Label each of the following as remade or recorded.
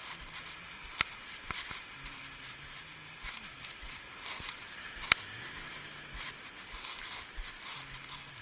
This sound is recorded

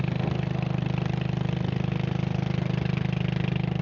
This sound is recorded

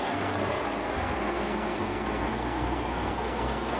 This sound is remade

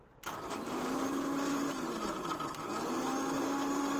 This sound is recorded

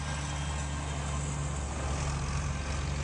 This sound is recorded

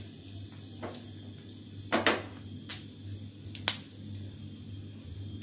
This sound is recorded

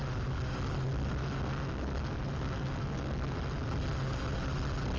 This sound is recorded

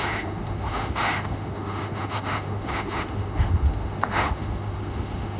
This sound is remade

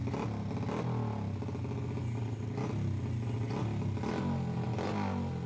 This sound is recorded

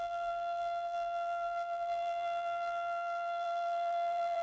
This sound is remade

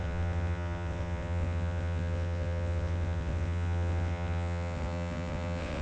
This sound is remade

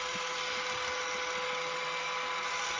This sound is recorded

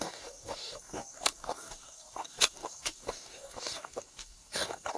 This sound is remade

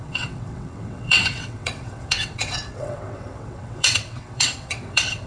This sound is remade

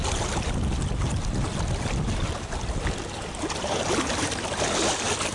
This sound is recorded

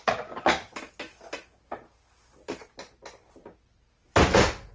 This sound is recorded